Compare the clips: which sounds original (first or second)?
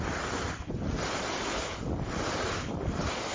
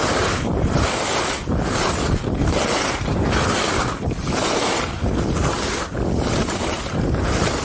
second